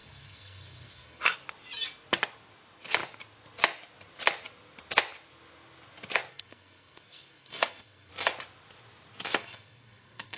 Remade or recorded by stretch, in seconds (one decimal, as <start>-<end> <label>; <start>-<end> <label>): 0.0-1.2 remade; 1.2-6.3 recorded; 6.3-8.1 remade; 8.1-9.4 recorded; 9.4-10.4 remade